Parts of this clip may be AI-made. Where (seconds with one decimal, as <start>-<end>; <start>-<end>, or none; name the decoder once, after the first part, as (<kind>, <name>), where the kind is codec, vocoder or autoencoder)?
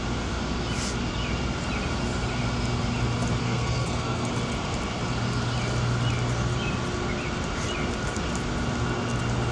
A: 3.4-4.3 (codec, SNAC)